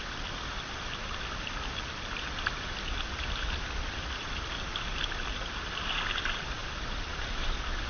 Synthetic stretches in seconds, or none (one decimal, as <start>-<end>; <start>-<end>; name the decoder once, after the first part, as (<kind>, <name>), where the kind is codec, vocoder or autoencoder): none